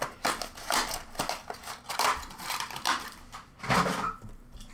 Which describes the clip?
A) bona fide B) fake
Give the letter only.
A